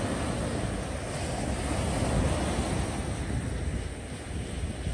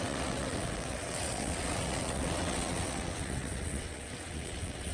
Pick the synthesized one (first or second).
second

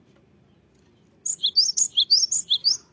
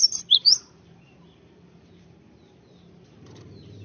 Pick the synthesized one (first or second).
second